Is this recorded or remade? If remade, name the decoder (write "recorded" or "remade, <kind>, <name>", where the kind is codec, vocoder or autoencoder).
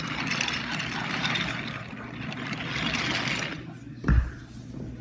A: recorded